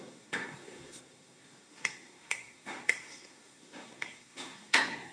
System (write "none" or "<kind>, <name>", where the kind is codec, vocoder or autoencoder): codec, SNAC